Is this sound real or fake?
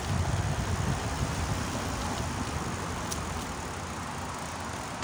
real